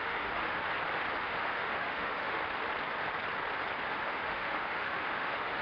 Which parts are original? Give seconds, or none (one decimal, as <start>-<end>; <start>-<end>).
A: 0.6-1.2; 2.4-3.9